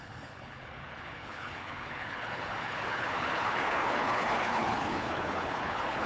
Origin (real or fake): fake